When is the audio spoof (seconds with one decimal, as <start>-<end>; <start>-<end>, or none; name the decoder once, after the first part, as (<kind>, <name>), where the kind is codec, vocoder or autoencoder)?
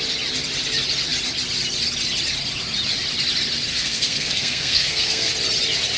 3.7-5.3 (codec, SNAC)